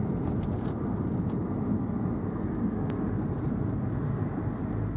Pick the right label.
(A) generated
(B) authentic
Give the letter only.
B